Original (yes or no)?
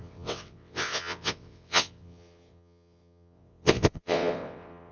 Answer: no